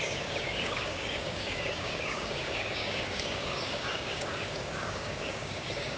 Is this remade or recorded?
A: remade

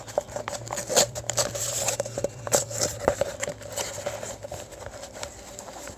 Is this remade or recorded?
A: remade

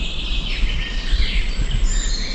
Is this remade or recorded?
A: recorded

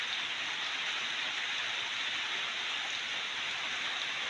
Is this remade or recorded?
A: recorded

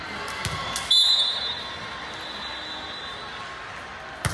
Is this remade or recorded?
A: recorded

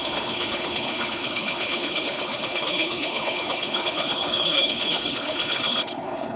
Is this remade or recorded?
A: remade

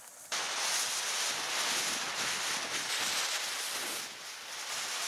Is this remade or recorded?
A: recorded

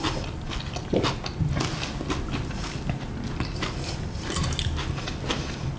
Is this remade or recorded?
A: recorded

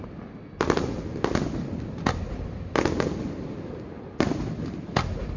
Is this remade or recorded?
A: recorded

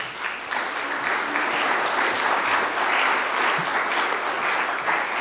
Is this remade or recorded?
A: recorded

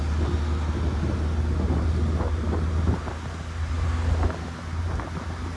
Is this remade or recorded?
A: recorded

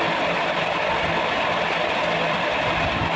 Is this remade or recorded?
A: recorded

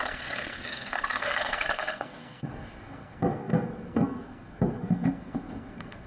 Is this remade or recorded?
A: remade